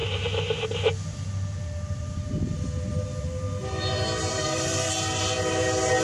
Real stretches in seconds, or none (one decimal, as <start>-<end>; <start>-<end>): 0.0-4.3; 4.9-6.0